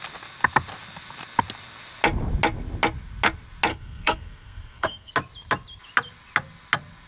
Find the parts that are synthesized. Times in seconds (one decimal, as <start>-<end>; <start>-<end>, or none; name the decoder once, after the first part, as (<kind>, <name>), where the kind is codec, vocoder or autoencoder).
3.7-5.1 (codec, SNAC)